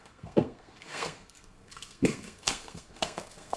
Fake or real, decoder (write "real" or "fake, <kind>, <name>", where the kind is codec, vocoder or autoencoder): fake, codec, SNAC